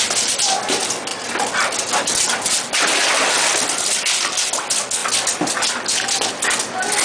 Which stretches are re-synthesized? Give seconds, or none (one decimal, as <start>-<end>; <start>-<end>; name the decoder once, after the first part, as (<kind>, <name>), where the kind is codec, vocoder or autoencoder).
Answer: 1.1-4.4 (vocoder, BigVGAN v2); 5.0-6.3